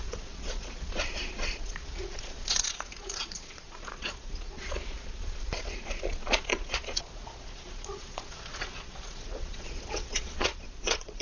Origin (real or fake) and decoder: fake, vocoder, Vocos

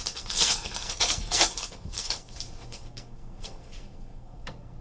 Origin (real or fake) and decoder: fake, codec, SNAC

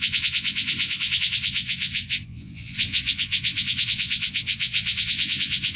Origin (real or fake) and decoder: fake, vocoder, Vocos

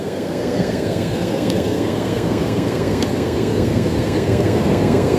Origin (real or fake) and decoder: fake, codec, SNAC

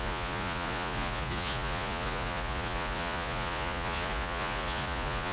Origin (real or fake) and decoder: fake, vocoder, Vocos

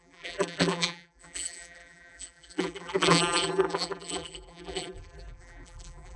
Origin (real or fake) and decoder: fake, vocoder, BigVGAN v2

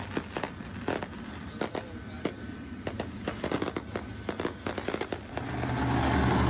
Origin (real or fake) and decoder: real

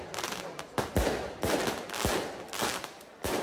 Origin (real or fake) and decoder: real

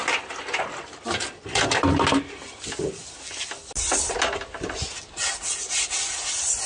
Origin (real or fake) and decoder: real